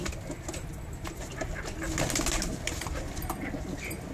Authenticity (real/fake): real